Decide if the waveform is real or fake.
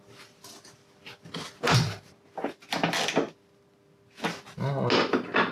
real